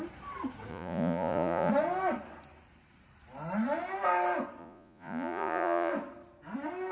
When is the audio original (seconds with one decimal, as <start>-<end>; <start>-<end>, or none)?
0.0-0.7; 1.7-4.6; 5.9-6.9